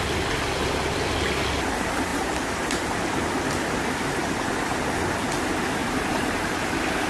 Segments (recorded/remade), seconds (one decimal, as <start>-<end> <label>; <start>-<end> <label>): 0.0-2.1 recorded; 2.1-3.0 remade; 3.0-4.2 recorded; 4.2-4.8 remade; 4.8-5.8 recorded; 5.8-6.5 remade; 6.5-7.1 recorded